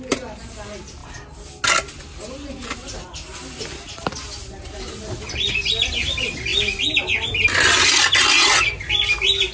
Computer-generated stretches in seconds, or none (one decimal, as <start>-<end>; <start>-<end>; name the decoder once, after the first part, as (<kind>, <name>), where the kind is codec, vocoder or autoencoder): none

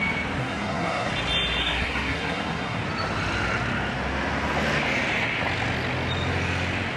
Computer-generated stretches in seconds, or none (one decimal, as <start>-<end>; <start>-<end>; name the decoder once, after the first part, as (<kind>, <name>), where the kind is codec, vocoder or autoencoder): 0.4-1.1 (codec, SNAC); 1.6-2.8

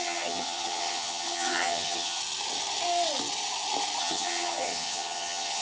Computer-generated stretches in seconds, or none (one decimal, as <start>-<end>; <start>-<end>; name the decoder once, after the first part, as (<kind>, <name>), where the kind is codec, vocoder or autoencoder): 0.0-2.2 (vocoder, HiFi-GAN); 4.0-5.6

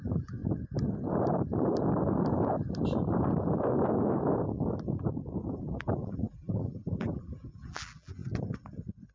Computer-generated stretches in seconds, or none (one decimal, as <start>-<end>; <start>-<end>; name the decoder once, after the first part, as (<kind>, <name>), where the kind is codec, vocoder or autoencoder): 0.0-0.4 (vocoder, BigVGAN v2); 5.5-8.2

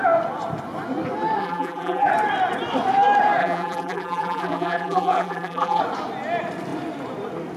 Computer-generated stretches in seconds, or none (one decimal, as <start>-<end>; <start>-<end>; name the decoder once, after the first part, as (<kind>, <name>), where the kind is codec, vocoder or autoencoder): 1.4-2.1 (vocoder, BigVGAN v2); 3.4-5.8

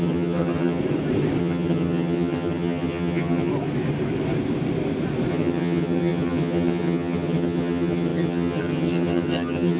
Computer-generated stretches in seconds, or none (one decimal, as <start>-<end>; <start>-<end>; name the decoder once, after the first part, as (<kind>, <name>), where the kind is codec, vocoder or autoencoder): 0.0-0.8 (vocoder, HiFi-GAN); 1.4-3.5; 5.3-9.8

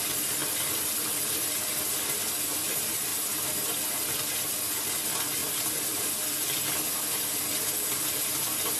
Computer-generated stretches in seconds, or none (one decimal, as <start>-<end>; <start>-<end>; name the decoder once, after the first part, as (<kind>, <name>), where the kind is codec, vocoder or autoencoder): none